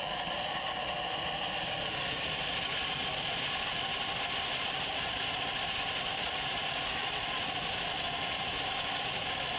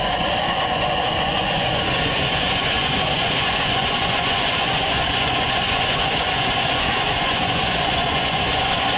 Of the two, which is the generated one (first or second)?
second